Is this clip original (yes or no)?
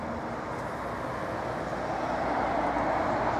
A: yes